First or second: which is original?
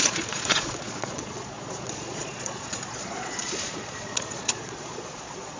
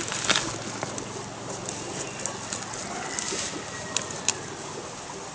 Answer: second